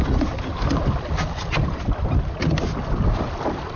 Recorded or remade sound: recorded